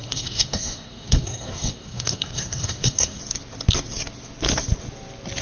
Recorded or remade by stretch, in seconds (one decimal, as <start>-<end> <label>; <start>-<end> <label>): 0.0-3.2 remade; 3.2-5.4 recorded